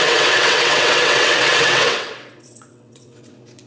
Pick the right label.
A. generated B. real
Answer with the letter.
A